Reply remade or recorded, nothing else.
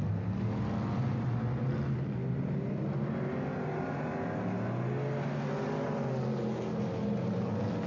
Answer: recorded